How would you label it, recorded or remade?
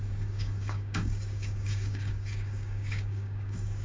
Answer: remade